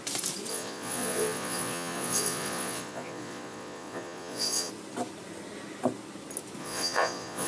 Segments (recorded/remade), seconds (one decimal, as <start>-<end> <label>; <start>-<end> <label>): 0.0-0.5 recorded; 0.5-4.7 remade; 4.7-6.6 recorded; 6.6-7.5 remade